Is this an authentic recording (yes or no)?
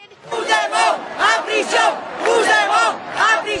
yes